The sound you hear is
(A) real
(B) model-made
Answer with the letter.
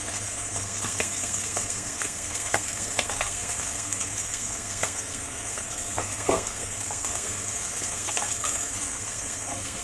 B